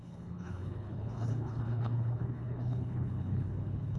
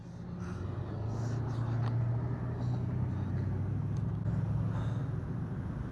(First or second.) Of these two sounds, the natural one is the second